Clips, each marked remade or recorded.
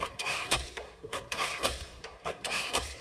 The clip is remade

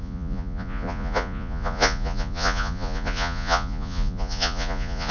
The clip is remade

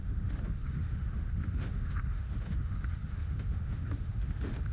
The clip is remade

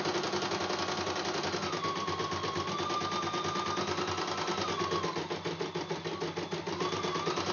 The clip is recorded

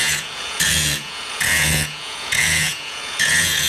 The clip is remade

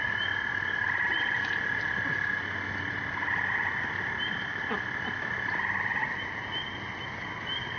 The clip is recorded